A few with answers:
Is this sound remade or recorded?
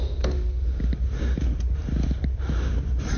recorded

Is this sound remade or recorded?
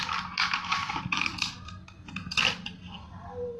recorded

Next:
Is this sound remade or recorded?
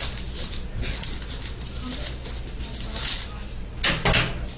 recorded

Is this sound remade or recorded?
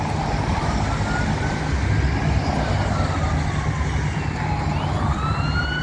recorded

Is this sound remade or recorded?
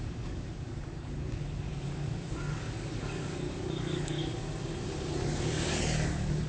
remade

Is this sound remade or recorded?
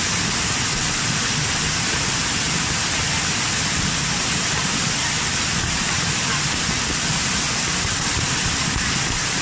recorded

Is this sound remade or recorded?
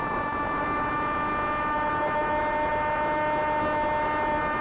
recorded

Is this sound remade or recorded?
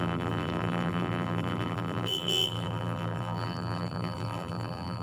remade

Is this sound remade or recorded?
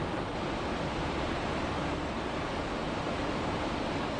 recorded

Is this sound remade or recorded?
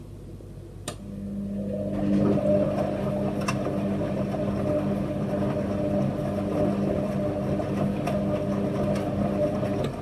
recorded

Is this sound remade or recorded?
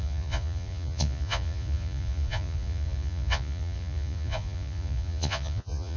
remade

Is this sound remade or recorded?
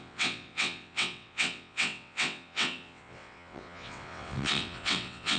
remade